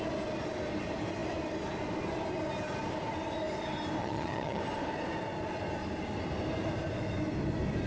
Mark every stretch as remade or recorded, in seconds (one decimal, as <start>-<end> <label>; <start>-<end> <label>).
0.0-4.0 recorded; 4.0-4.6 remade; 4.6-7.9 recorded